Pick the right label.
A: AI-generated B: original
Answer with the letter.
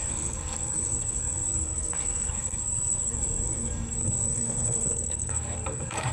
A